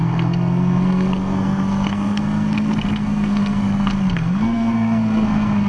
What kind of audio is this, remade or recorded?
remade